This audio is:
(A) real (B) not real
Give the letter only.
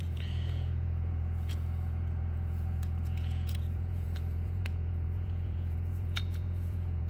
B